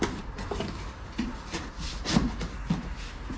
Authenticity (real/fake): real